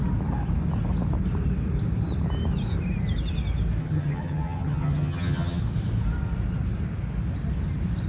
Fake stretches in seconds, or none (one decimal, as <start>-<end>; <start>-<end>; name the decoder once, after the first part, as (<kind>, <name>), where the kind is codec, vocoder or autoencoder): 3.8-5.6 (vocoder, HiFi-GAN)